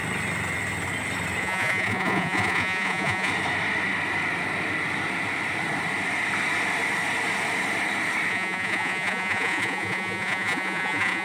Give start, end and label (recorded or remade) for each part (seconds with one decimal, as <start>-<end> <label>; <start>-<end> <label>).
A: 0.0-1.4 recorded; 1.4-3.3 remade; 3.3-8.3 recorded; 8.3-11.2 remade